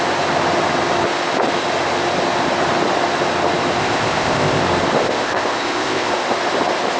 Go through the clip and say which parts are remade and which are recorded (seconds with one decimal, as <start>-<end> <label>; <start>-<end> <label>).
0.0-3.8 recorded; 3.8-4.6 remade; 4.6-5.0 recorded; 5.0-6.1 remade; 6.1-7.0 recorded